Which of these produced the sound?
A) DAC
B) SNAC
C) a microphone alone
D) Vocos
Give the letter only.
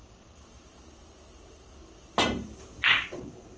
C